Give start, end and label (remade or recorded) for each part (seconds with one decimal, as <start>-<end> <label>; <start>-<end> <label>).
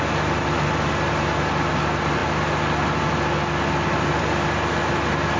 0.0-5.4 recorded